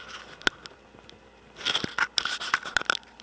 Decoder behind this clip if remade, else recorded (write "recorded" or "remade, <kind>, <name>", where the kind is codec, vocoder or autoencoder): recorded